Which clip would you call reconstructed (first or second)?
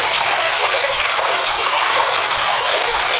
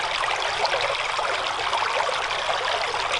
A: first